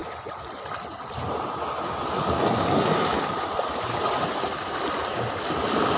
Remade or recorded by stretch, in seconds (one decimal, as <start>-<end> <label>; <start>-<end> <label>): 0.0-6.0 recorded